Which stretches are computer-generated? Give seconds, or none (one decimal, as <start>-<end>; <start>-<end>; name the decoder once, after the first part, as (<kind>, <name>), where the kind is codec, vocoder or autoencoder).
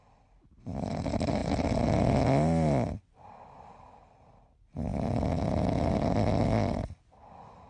none